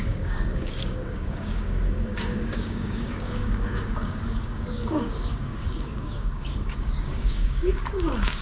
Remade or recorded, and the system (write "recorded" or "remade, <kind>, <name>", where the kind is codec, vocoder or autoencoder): remade, codec, DAC